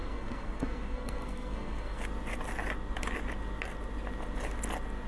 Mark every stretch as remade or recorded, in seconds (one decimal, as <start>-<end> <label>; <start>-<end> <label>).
0.0-2.0 remade; 2.0-5.1 recorded